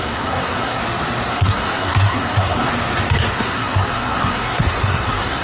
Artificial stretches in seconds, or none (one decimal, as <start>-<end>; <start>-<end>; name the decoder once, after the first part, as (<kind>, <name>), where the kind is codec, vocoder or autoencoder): 0.0-0.8 (codec, SNAC); 1.3-2.7; 3.3-5.4